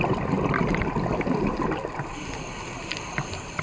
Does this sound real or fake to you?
real